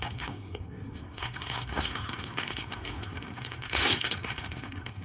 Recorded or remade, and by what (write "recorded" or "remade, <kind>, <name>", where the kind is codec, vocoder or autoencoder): remade, codec, SNAC